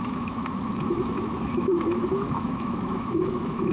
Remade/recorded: remade